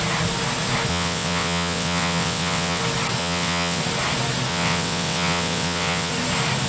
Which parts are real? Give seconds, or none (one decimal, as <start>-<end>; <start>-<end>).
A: 0.0-0.9; 2.8-3.2; 3.8-4.5; 6.1-6.7